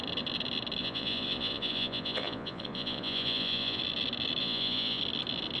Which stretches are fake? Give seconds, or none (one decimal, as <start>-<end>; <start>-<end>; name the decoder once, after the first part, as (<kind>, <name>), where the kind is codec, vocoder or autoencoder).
0.8-3.8 (vocoder, Vocos); 4.4-5.0